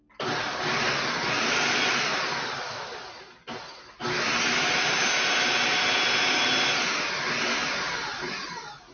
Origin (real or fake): real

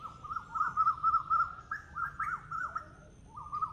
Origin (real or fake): real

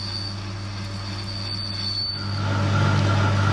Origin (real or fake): real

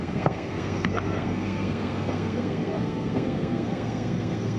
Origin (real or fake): fake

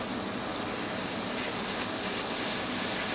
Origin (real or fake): real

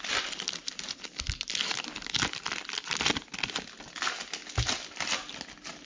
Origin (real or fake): real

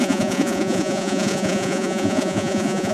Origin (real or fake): fake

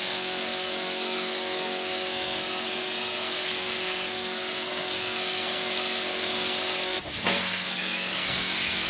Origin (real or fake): fake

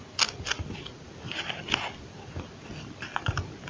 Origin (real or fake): real